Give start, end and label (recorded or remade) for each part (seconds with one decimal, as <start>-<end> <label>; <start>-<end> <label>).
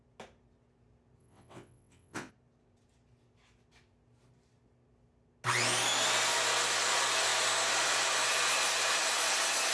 0.0-1.2 recorded; 1.2-2.3 remade; 2.3-9.7 recorded